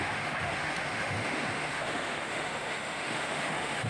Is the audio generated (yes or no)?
yes